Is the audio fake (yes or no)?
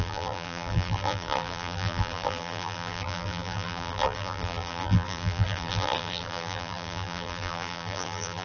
yes